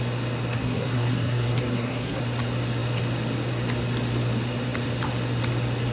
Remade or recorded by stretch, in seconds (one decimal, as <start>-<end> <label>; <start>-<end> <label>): 0.0-0.5 recorded; 0.5-2.2 remade; 2.2-5.9 recorded